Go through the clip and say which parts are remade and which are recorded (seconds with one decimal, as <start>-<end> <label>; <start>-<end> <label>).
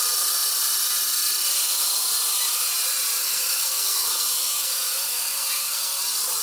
0.0-3.2 recorded; 3.2-6.0 remade; 6.0-6.4 recorded